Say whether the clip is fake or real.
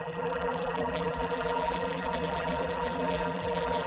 fake